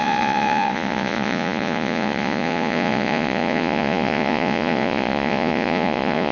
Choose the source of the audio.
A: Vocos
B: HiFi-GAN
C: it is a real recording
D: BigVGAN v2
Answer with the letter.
A